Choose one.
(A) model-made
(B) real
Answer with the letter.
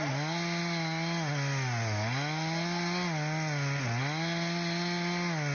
B